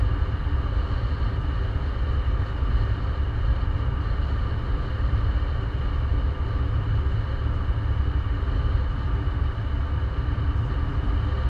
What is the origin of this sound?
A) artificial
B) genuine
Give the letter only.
B